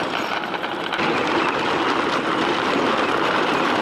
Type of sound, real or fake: real